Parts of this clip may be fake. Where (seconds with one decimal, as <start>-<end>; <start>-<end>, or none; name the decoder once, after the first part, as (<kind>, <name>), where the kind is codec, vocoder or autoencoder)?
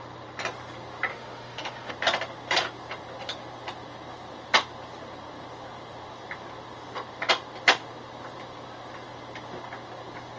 1.1-1.9 (autoencoder, DAC-VAE)